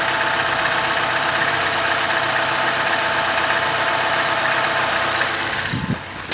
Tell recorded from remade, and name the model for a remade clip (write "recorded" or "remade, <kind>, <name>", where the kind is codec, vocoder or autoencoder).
recorded